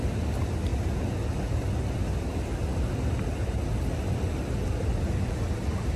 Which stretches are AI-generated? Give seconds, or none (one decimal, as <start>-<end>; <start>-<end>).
none